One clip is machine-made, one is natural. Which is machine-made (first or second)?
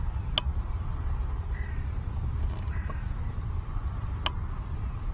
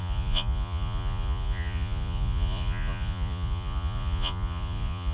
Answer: second